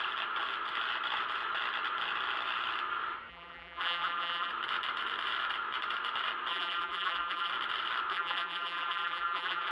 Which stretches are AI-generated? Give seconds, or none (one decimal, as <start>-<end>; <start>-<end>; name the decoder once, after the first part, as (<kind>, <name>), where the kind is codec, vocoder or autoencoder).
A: 3.3-4.5 (vocoder, BigVGAN v2); 6.5-7.5; 8.1-9.7